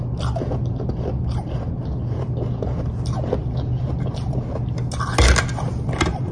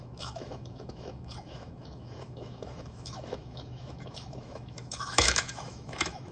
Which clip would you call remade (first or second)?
second